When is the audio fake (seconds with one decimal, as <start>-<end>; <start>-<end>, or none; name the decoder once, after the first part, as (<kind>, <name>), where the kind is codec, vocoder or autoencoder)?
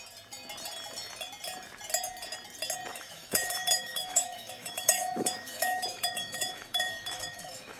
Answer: 2.9-7.8 (autoencoder, DAC-VAE)